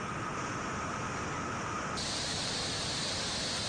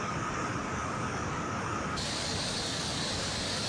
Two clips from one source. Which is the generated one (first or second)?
second